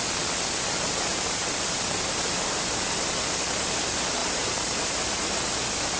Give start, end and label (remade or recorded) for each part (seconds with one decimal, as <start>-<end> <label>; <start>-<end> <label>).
0.0-1.1 recorded; 1.1-2.7 remade; 2.7-4.2 recorded; 4.2-5.3 remade; 5.3-6.0 recorded